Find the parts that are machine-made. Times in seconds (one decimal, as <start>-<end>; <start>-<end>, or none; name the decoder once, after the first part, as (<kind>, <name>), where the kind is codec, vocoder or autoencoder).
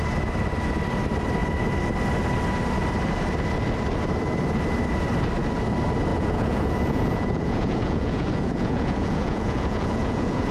6.1-10.5 (vocoder, Vocos)